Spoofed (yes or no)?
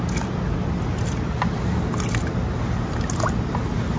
no